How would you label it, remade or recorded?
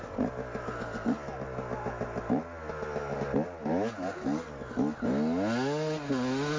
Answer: recorded